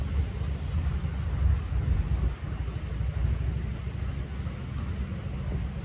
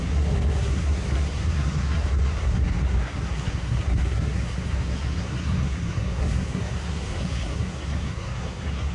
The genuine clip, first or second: first